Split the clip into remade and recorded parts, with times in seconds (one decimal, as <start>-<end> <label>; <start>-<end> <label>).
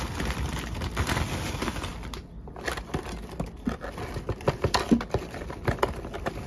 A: 0.0-6.5 recorded